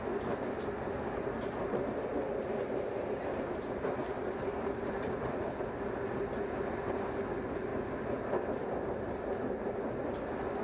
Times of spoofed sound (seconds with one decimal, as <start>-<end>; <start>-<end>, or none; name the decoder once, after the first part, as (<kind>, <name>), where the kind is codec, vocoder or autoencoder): 2.1-7.2 (vocoder, BigVGAN v2); 7.7-10.6